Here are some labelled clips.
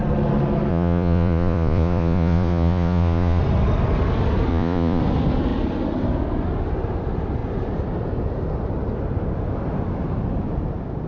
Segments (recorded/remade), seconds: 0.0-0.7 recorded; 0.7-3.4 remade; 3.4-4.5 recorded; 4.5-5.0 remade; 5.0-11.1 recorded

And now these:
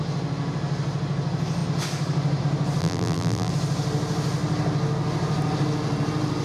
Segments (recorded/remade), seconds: 0.0-2.8 recorded; 2.8-3.5 remade; 3.5-6.4 recorded